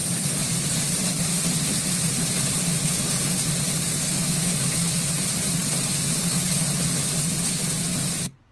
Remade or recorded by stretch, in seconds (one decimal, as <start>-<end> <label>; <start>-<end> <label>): 0.0-2.7 remade; 2.7-8.5 recorded